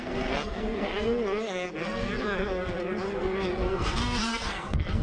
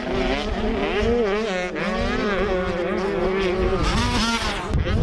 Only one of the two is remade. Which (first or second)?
first